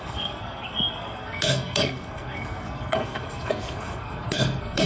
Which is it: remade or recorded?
remade